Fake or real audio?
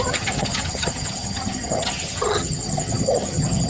fake